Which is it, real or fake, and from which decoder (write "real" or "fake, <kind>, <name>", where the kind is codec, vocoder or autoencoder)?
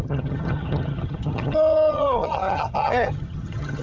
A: fake, vocoder, HiFi-GAN